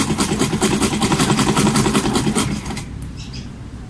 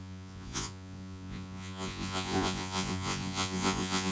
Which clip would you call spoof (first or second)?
second